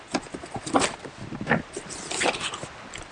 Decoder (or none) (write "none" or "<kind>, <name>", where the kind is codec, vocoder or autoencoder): none